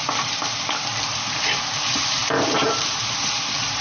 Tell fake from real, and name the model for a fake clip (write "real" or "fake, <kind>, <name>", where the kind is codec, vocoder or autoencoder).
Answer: real